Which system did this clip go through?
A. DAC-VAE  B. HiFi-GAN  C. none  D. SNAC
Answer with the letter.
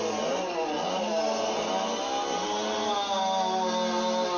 C